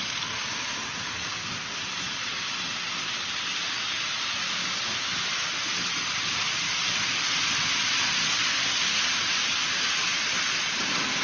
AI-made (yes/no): no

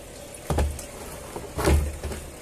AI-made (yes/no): no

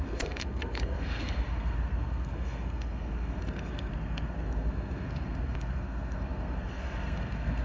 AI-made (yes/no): yes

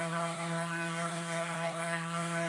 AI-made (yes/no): yes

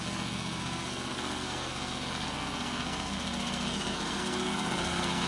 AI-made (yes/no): yes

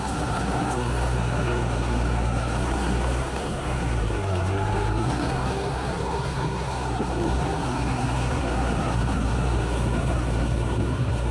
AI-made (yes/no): yes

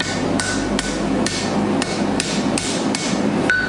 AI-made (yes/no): no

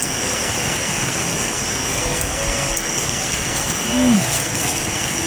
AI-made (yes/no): yes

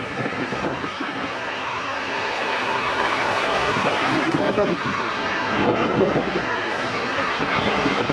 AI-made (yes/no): yes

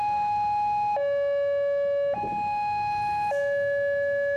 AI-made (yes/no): no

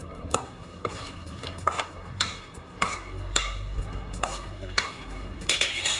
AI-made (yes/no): yes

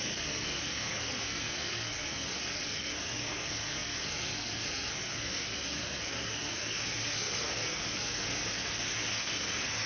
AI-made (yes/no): yes